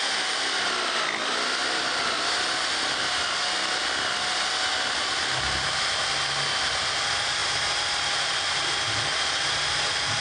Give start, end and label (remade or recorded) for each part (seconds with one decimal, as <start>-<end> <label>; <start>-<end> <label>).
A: 0.0-10.2 recorded